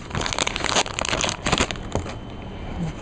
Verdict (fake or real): real